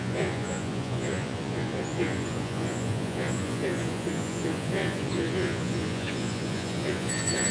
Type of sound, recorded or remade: remade